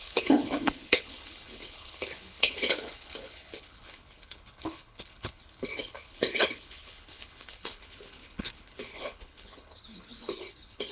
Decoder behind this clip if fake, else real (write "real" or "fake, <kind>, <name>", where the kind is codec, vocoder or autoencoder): fake, codec, HILCodec